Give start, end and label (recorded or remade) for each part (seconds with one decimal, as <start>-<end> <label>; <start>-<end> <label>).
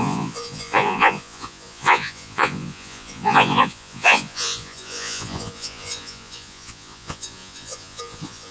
0.0-8.5 remade